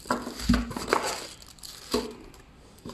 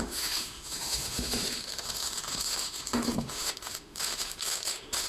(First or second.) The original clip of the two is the first